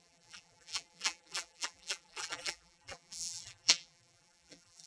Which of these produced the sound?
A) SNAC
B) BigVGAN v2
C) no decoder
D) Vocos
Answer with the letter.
B